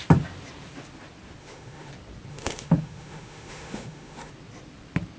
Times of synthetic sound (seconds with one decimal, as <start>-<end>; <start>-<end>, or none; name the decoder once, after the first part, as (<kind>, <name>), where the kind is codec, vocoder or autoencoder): 1.4-1.9 (autoencoder, DAC-VAE); 2.3-4.3